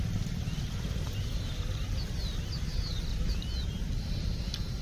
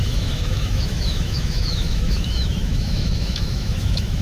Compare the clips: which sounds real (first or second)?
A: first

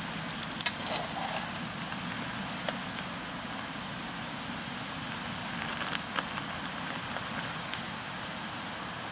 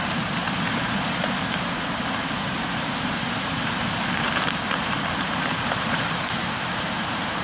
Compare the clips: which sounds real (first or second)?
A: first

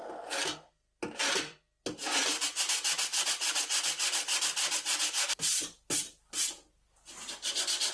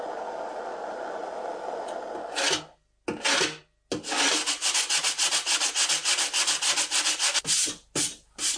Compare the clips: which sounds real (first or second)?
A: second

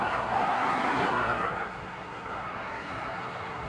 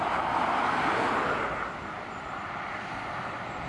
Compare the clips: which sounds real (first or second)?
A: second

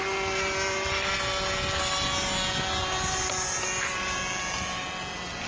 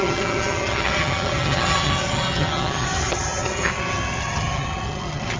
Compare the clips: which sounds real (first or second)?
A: first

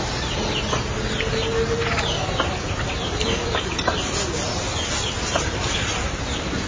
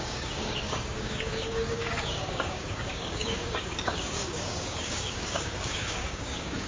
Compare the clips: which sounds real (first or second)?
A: first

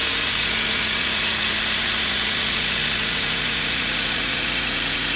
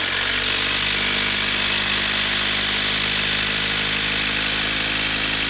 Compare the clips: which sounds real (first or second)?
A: second